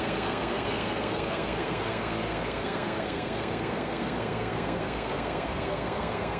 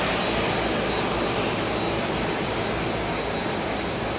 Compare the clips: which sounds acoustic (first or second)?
second